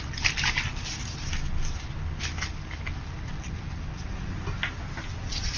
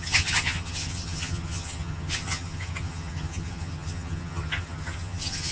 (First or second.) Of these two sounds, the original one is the first